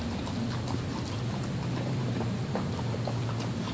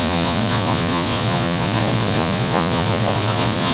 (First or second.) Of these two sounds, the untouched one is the first